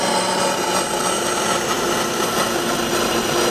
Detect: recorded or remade recorded